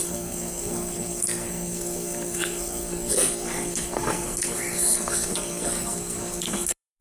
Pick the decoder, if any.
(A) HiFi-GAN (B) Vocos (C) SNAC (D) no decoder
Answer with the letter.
C